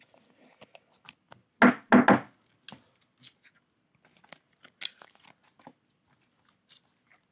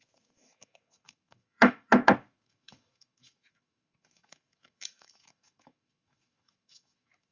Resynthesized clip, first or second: second